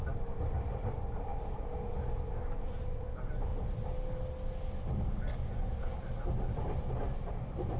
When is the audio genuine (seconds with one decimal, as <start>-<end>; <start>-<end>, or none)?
3.5-7.3